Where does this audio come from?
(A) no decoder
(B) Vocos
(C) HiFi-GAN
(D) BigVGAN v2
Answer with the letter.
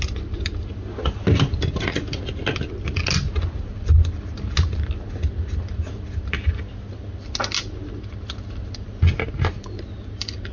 A